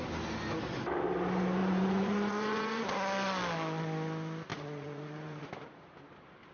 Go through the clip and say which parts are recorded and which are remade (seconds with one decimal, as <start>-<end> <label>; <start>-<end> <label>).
0.0-1.6 recorded; 1.6-2.8 remade; 2.8-4.5 recorded; 4.5-5.4 remade; 5.4-6.5 recorded